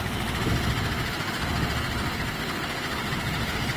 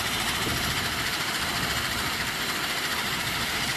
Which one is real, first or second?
first